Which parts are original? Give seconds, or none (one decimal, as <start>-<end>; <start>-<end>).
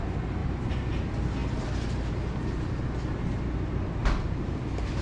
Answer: 0.0-0.4; 0.9-4.0; 4.6-5.0